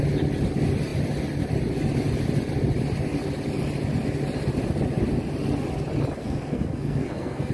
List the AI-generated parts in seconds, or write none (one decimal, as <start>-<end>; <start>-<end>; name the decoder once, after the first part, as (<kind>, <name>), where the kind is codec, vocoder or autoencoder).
6.2-7.5 (codec, SNAC)